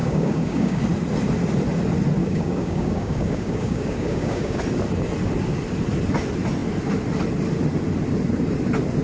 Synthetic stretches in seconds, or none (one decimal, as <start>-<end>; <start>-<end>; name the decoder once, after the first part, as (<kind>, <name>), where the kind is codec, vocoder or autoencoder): 0.0-0.8 (codec, DAC); 2.2-4.6